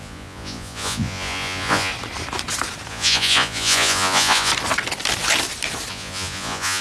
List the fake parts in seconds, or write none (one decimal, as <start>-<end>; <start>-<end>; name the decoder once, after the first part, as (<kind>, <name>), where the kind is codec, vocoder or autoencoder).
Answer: 0.0-1.9 (vocoder, Vocos); 2.9-4.5; 5.9-6.8